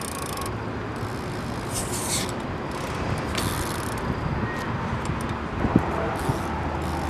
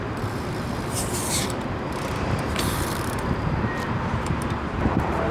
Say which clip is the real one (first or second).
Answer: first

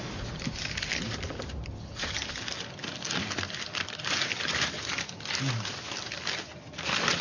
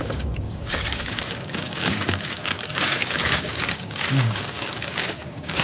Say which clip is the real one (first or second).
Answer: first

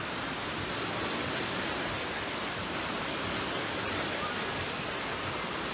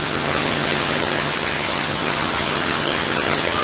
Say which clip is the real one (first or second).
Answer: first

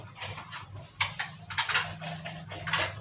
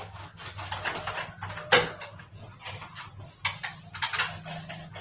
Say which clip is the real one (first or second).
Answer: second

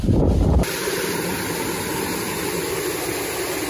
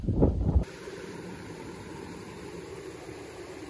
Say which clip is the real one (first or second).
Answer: first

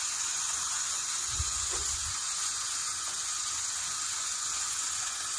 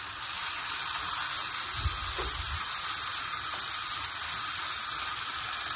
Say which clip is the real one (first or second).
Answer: second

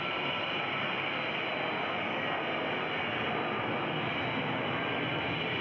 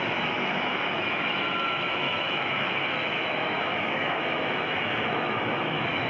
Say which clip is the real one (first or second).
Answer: first